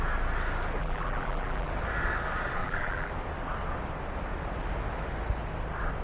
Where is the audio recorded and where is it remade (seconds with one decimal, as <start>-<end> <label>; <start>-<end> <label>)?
0.0-0.8 recorded; 0.8-1.7 remade; 1.7-2.6 recorded; 2.6-3.1 remade; 3.1-6.0 recorded